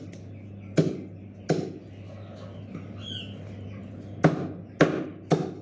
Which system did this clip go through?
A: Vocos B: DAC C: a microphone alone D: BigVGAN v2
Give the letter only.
C